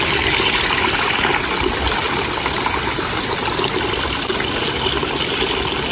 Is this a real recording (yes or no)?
yes